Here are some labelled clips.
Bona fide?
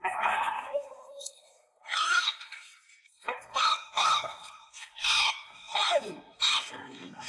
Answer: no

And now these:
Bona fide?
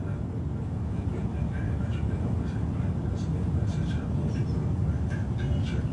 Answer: yes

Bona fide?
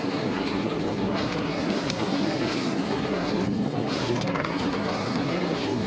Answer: no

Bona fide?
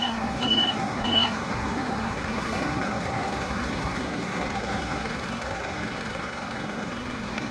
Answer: no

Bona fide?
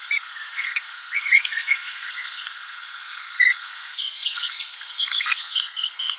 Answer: no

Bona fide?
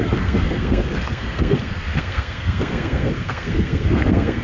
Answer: no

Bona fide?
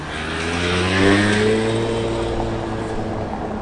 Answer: yes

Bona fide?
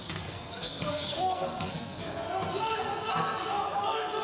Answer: no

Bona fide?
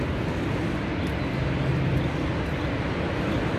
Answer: yes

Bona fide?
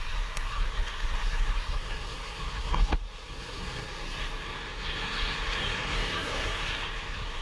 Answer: no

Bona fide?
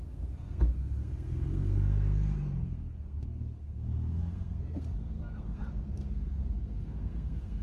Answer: no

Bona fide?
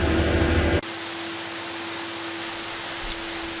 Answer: yes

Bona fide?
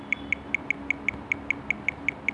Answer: yes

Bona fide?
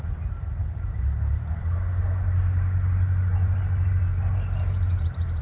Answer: yes